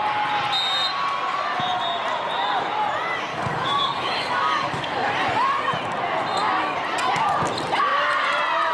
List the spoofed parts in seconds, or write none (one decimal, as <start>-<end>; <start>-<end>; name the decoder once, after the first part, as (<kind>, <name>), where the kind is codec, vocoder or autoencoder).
3.3-5.1 (codec, DAC)